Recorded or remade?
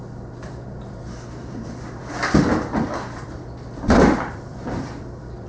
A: remade